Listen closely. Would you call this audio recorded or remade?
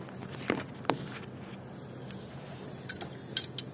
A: recorded